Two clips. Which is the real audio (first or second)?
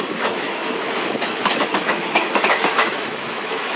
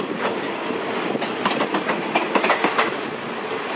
second